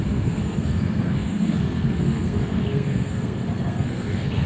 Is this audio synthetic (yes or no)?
yes